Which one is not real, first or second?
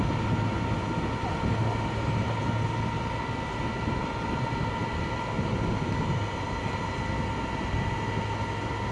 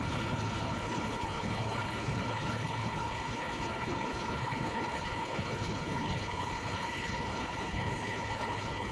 second